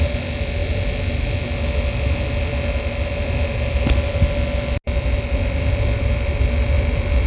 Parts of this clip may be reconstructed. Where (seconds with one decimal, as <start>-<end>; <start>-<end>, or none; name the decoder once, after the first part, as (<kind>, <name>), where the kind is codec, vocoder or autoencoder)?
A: none